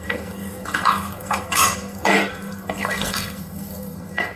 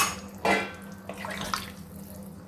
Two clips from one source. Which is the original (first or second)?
second